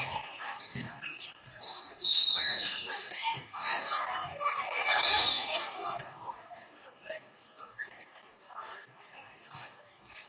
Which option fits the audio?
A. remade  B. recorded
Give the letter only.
A